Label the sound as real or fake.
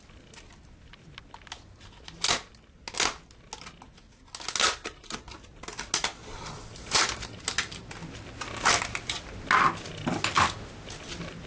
real